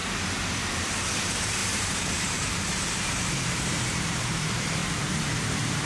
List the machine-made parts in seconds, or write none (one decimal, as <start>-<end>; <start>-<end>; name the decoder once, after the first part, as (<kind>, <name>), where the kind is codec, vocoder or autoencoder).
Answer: 1.1-4.8 (vocoder, BigVGAN v2); 5.3-5.9